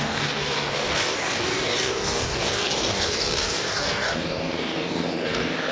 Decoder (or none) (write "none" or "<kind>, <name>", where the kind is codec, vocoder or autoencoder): codec, DAC